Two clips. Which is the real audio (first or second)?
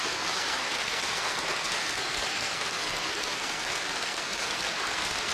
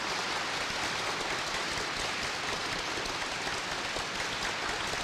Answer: second